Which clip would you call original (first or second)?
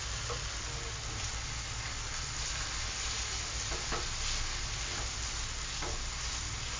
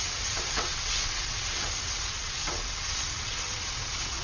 first